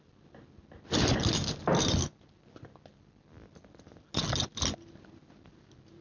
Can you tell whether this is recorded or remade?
recorded